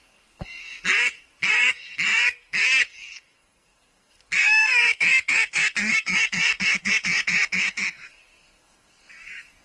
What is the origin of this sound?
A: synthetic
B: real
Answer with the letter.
A